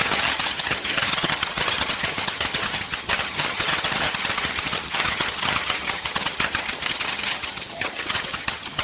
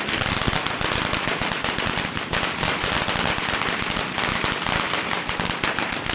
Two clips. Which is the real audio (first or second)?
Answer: second